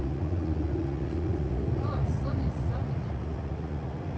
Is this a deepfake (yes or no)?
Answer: yes